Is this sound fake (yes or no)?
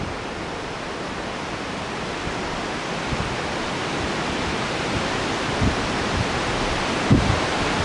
no